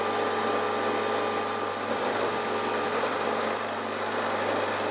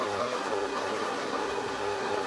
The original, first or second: first